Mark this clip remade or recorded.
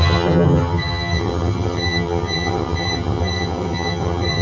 remade